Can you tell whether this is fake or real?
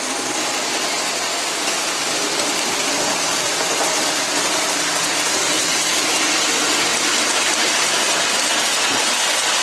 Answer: real